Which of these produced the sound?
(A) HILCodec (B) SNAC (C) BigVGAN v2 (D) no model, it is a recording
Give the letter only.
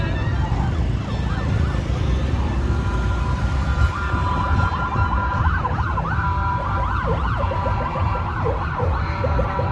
D